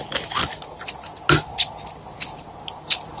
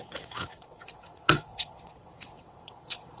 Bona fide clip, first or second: first